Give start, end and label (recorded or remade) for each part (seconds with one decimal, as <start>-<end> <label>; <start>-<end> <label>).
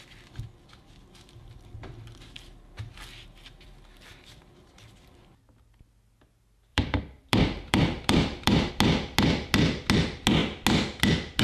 0.0-6.7 recorded; 6.7-8.7 remade; 8.7-11.4 recorded